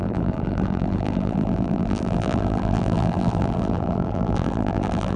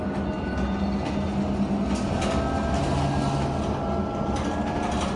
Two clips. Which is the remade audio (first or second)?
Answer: first